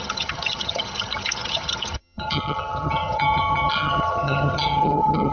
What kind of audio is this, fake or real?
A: fake